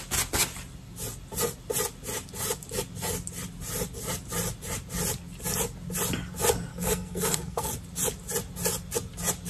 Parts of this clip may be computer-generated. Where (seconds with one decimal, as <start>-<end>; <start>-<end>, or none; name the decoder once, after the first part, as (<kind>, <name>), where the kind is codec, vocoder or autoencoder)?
6.7-7.7 (codec, SNAC)